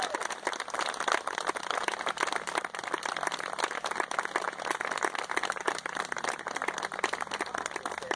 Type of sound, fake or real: real